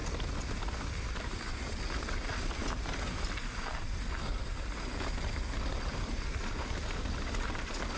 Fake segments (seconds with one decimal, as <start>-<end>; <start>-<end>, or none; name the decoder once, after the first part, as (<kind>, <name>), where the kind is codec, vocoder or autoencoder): 1.2-2.3 (vocoder, BigVGAN v2); 6.7-8.0